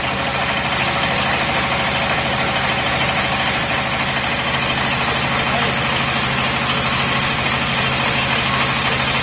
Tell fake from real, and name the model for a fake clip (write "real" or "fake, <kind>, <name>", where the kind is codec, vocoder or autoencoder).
real